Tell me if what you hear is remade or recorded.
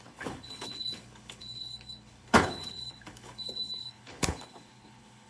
remade